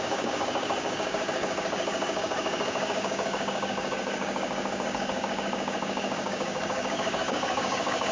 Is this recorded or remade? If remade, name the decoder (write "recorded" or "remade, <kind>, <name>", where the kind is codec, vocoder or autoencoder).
remade, codec, DAC